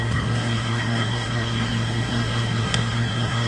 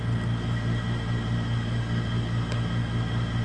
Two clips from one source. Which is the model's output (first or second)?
first